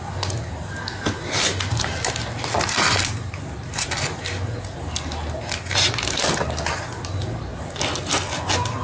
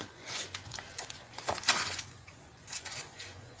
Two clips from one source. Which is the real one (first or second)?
first